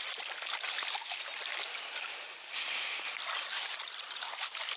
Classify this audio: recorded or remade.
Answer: recorded